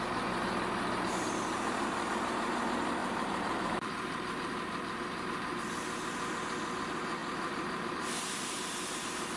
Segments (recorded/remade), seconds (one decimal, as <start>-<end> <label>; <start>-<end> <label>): 0.0-3.0 recorded; 3.0-5.6 remade; 5.6-7.2 recorded; 7.2-9.0 remade; 9.0-9.4 recorded